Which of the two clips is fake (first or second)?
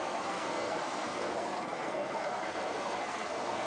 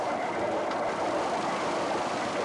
first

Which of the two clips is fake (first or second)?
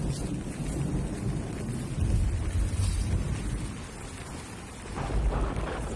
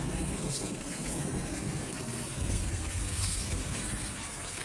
second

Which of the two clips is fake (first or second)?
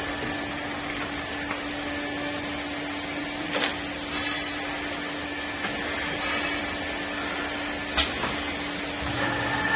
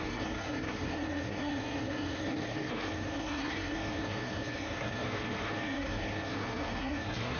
second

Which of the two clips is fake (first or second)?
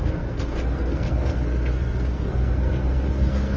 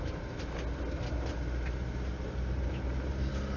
first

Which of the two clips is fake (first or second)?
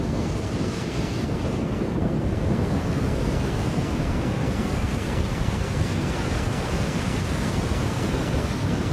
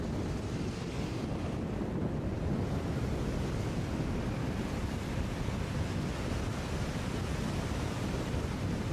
first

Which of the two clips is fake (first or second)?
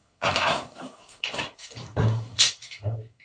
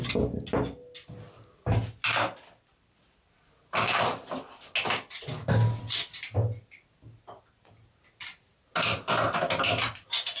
first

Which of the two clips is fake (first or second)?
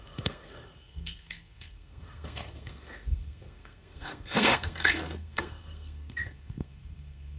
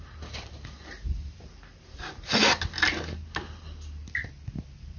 first